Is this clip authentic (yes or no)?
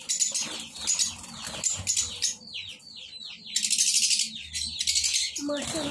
yes